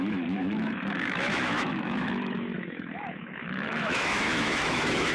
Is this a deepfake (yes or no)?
yes